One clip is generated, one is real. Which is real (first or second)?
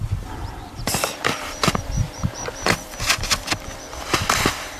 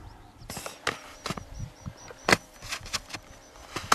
second